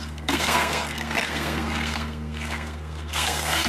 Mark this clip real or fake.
fake